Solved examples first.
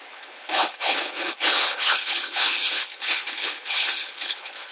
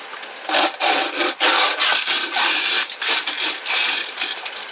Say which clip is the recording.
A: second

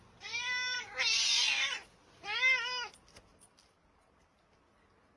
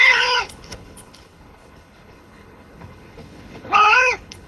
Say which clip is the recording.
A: first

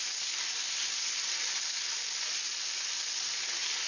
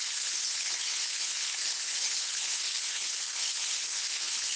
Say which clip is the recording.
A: first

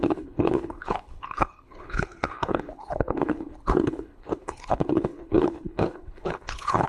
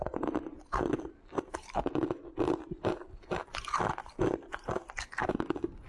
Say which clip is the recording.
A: second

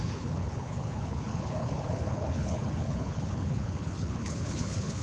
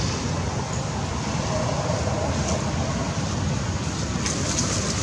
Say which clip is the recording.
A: second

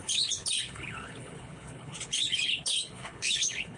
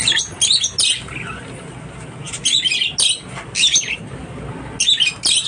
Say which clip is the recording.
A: second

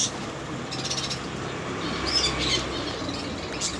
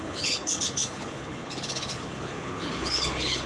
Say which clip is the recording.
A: first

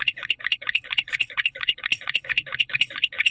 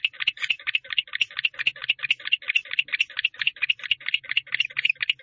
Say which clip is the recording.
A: second